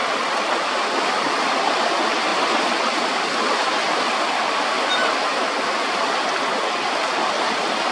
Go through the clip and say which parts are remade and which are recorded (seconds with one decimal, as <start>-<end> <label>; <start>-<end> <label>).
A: 0.0-7.9 recorded